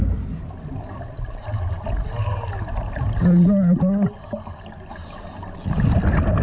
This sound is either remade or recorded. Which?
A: recorded